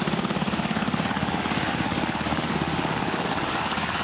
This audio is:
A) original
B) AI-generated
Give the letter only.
B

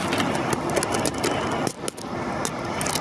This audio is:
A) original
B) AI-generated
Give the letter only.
A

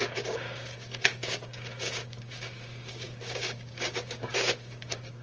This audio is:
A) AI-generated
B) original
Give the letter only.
A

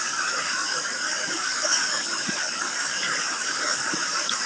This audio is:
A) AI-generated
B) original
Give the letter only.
A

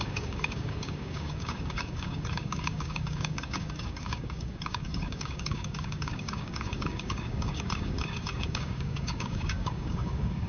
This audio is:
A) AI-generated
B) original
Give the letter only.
A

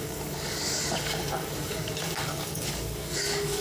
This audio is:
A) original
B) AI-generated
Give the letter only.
B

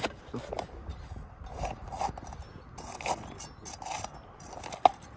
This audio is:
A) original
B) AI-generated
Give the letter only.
A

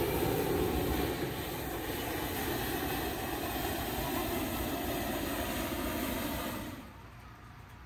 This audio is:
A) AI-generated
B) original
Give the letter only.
B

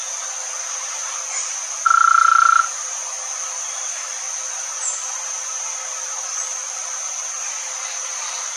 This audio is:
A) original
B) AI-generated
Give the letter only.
A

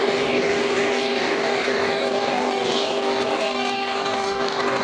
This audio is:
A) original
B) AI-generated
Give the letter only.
B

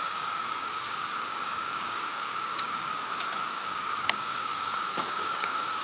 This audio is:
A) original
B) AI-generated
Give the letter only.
B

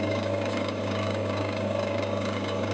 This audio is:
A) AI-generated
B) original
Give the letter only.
A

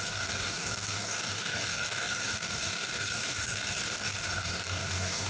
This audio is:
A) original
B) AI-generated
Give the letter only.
B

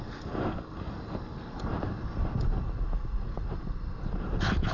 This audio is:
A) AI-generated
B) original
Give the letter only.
B